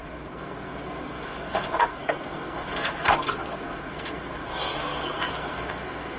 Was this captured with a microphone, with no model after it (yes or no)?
no